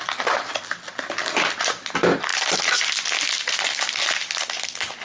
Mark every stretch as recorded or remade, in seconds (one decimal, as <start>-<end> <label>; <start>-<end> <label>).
0.0-5.0 recorded